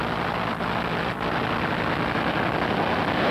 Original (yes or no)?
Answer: yes